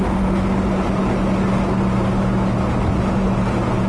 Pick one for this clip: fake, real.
real